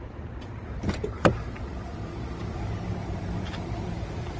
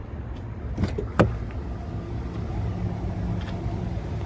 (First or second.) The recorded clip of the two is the second